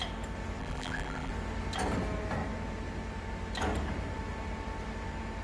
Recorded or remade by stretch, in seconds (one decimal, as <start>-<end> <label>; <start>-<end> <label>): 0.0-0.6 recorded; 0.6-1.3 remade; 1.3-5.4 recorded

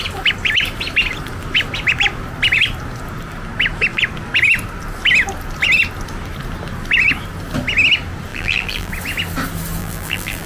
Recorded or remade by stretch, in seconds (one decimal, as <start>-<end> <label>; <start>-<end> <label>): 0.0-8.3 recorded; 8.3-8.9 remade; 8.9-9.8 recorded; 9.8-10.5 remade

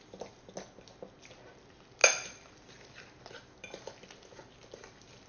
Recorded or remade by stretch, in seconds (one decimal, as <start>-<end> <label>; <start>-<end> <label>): 0.0-5.3 recorded

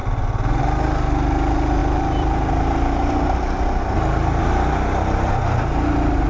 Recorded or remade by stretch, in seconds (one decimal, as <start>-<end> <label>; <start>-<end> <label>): 0.0-6.3 recorded

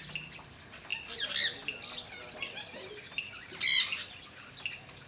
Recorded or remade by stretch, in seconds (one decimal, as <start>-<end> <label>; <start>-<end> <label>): 0.0-5.1 recorded

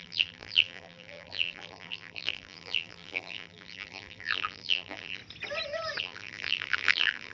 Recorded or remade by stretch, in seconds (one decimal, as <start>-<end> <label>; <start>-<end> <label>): 0.0-5.2 remade; 5.2-6.0 recorded; 6.0-7.3 remade

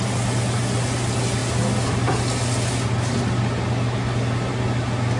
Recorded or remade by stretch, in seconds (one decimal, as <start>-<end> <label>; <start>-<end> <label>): 0.0-5.2 recorded